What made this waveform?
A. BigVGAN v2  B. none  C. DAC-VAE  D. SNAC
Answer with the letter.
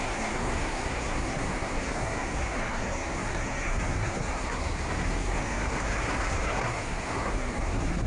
D